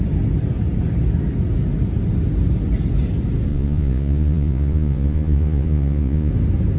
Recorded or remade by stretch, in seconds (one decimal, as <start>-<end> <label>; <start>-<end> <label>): 0.0-3.5 recorded; 3.5-6.3 remade; 6.3-6.8 recorded

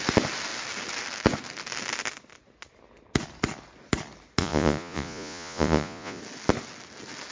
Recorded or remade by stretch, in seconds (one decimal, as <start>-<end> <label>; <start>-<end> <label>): 0.0-4.4 recorded; 4.4-6.2 remade; 6.2-7.3 recorded